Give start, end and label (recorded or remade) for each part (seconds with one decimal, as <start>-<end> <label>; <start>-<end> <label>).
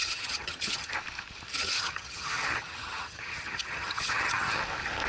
0.0-0.9 remade; 0.9-1.5 recorded; 1.5-4.6 remade; 4.6-5.1 recorded